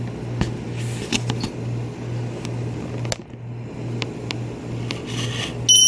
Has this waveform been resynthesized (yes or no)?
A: no